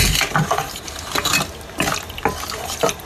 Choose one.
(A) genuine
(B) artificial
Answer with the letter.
A